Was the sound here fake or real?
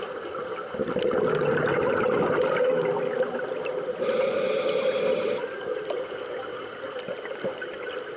real